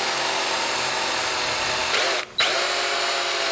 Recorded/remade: recorded